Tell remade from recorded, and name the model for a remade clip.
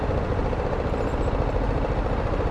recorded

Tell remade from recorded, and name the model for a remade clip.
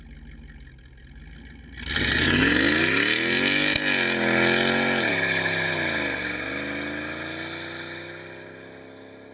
recorded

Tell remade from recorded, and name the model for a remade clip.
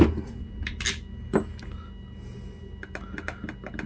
recorded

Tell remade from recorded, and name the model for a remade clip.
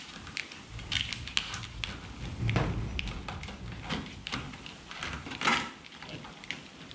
recorded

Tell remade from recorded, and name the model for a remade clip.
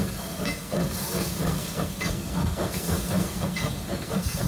remade, codec, SNAC